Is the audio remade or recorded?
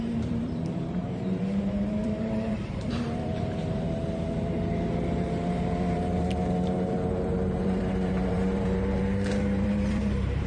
remade